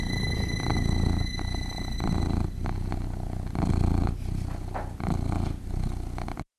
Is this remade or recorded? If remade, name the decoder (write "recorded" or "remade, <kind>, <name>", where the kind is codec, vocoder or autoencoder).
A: recorded